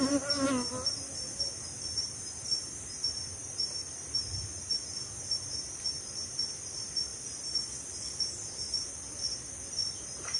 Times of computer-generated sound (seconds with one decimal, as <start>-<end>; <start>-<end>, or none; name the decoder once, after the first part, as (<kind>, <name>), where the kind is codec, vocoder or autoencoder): none